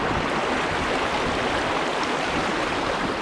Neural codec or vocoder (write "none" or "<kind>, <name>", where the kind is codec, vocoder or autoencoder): none